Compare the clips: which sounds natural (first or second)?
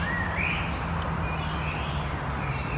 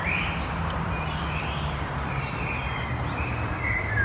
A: first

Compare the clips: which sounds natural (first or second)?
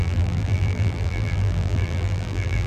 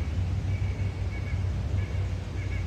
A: second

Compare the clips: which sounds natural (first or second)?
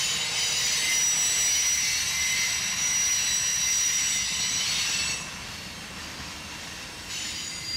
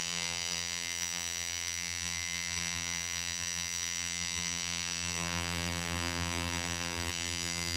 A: first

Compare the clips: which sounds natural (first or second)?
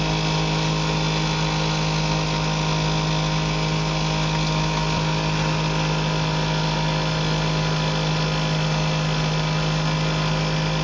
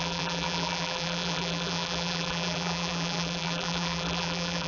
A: first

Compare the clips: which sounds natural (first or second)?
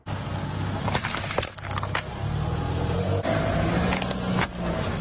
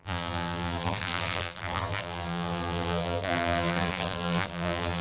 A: first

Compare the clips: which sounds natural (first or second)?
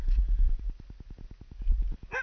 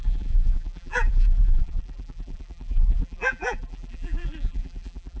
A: first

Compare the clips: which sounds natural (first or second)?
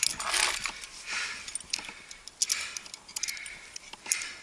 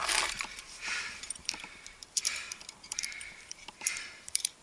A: first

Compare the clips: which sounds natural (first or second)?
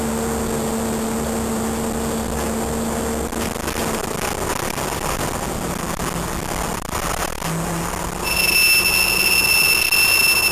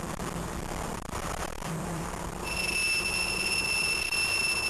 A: first